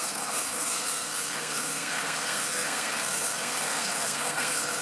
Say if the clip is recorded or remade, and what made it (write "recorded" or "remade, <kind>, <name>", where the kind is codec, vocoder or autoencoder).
remade, codec, SNAC